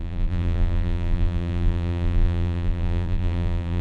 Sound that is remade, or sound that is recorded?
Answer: remade